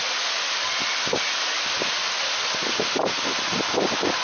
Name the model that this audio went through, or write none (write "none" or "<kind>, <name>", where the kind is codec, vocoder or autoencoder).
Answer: none